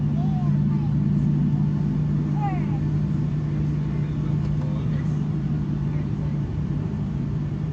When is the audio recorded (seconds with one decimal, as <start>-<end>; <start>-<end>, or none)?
0.4-4.8